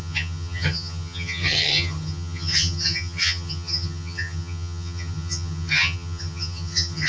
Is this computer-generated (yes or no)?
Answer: yes